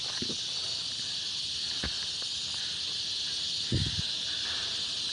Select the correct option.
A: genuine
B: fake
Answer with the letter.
A